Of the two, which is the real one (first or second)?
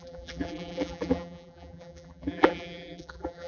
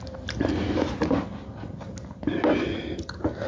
second